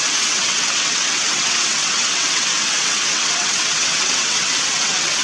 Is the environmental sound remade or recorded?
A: remade